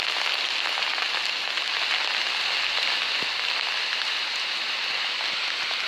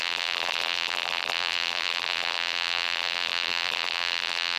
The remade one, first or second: second